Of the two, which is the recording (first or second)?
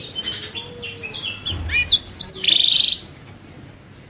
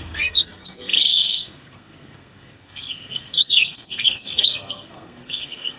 first